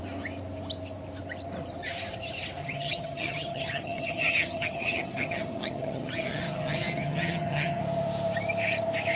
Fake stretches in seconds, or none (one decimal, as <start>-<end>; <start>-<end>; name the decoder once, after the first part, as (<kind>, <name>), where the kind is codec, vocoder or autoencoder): 2.6-7.8 (vocoder, HiFi-GAN)